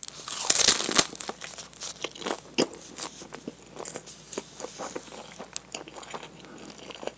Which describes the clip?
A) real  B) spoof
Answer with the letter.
A